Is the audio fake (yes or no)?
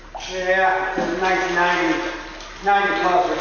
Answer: no